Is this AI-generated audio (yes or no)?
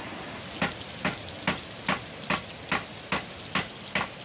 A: no